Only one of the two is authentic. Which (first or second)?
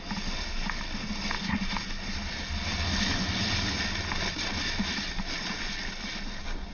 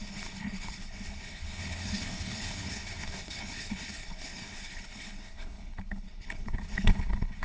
first